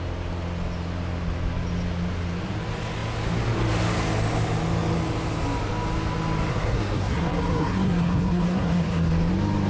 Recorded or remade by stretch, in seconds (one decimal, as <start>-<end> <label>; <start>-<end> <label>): 0.0-6.5 recorded; 6.5-9.1 remade; 9.1-9.7 recorded